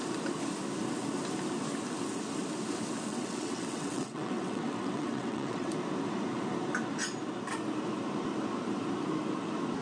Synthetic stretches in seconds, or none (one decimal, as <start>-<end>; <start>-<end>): 3.1-5.7